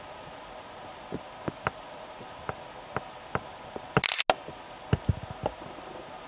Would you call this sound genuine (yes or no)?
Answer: yes